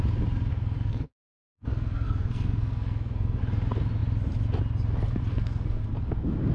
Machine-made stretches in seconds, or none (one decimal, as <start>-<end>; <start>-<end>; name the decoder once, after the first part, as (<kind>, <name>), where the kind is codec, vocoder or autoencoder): 0.5-3.4 (codec, SNAC); 5.3-5.9